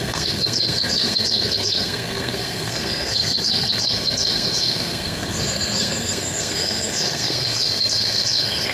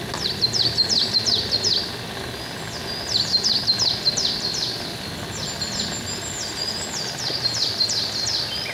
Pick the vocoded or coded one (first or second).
first